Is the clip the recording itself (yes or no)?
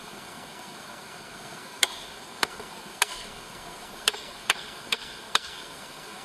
no